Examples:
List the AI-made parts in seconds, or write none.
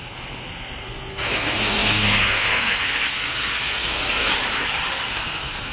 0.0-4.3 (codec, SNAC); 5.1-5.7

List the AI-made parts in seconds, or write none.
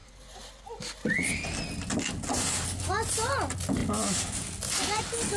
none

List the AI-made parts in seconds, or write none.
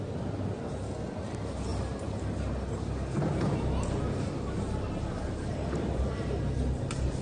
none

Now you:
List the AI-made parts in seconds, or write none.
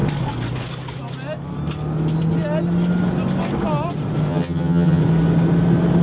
4.3-5.0 (vocoder, HiFi-GAN)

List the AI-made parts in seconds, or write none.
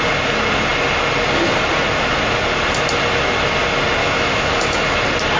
4.0-5.0 (autoencoder, DAC-VAE)